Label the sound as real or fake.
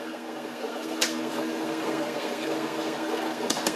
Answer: fake